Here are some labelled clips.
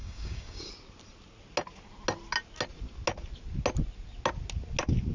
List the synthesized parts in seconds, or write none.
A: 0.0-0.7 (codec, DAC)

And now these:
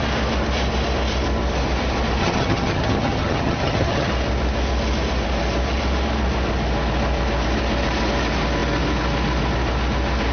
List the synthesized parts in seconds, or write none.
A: 2.2-4.1 (vocoder, HiFi-GAN)

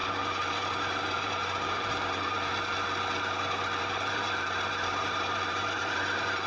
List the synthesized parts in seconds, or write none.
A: 0.0-2.5 (vocoder, BigVGAN v2); 3.8-6.5

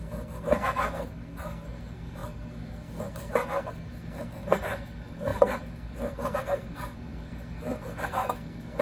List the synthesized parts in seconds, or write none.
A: 0.0-8.8 (codec, SNAC)